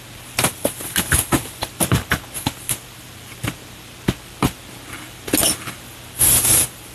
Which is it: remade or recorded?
recorded